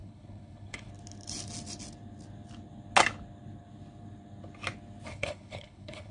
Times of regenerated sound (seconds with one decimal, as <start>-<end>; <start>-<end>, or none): 0.0-0.9; 5.1-6.1

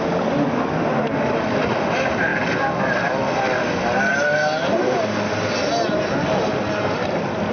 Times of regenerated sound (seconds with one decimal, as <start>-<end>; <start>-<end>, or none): 2.3-3.0

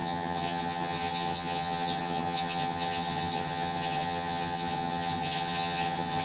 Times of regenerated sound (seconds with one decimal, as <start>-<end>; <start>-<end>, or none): 0.0-6.2